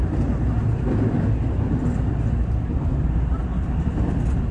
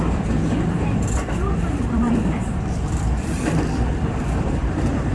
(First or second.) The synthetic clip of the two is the second